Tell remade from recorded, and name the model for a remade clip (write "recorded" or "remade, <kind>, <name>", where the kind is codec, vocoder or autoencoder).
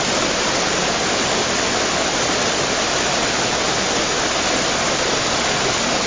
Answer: recorded